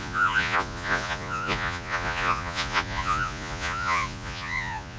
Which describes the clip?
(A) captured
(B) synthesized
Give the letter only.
B